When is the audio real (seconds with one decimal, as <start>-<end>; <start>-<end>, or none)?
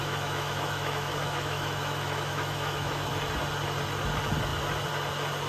3.1-5.5